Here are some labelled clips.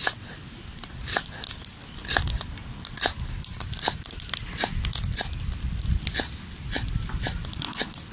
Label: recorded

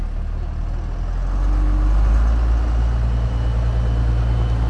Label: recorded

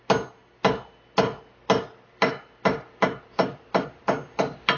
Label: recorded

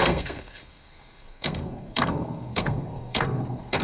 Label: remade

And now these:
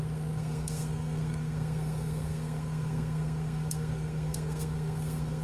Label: remade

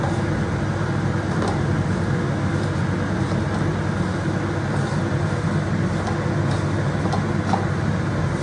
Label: recorded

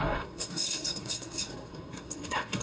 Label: remade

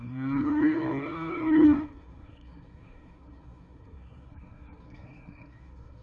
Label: remade